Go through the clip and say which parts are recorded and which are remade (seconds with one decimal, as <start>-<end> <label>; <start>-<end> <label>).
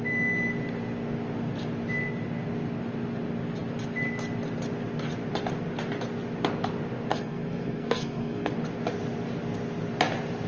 0.0-7.1 recorded; 7.1-8.5 remade; 8.5-10.5 recorded